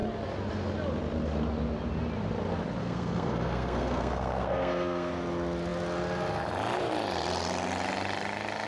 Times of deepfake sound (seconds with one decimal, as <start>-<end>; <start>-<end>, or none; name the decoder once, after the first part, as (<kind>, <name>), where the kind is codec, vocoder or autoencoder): 2.8-5.1 (codec, SNAC)